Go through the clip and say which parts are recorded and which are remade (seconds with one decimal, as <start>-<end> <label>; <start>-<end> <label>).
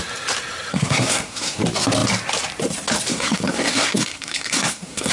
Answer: 0.0-0.7 recorded; 0.7-1.6 remade; 1.6-3.1 recorded; 3.1-5.1 remade